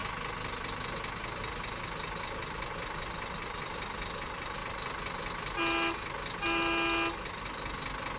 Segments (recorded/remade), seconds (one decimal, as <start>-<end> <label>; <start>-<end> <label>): 0.0-2.3 recorded; 2.3-4.6 remade; 4.6-8.2 recorded